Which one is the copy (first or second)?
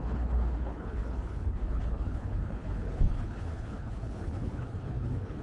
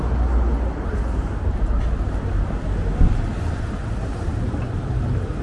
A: first